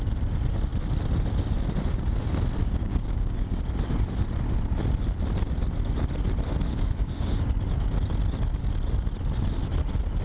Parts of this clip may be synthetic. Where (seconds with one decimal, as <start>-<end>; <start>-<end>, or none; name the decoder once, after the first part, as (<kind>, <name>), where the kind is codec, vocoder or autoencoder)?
2.6-3.6 (codec, DAC); 6.7-7.5